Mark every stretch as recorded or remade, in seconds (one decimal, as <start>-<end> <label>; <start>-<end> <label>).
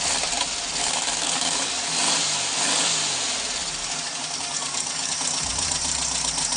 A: 0.0-0.8 recorded; 0.8-2.0 remade; 2.0-3.8 recorded; 3.8-5.1 remade; 5.1-6.6 recorded